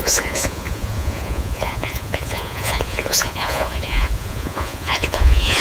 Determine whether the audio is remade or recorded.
remade